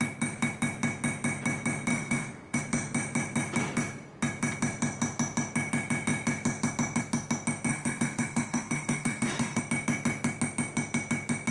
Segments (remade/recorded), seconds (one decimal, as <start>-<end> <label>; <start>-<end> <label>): 0.0-1.9 recorded; 1.9-2.6 remade; 2.6-7.7 recorded; 7.7-9.6 remade; 9.6-11.5 recorded